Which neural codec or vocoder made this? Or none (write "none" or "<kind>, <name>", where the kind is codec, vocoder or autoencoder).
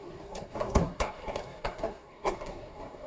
codec, SNAC